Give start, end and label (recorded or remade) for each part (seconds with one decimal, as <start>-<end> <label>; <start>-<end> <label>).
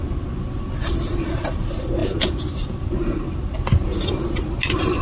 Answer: 0.0-5.0 recorded